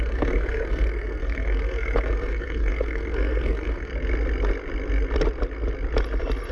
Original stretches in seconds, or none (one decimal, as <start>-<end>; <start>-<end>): 3.9-6.5